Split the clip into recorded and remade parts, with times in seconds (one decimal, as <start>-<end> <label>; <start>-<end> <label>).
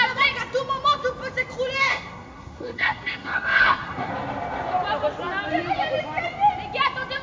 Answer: 0.0-1.9 recorded; 1.9-4.1 remade; 4.1-7.2 recorded